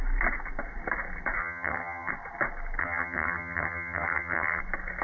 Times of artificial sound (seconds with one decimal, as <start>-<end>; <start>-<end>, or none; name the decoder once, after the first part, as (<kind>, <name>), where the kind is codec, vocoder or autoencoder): 1.4-2.1 (vocoder, HiFi-GAN); 2.8-4.6